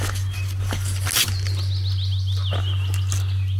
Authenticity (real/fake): real